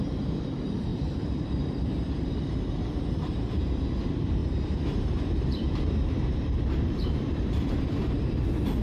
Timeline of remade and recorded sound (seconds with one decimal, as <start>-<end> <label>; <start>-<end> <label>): 0.0-8.8 remade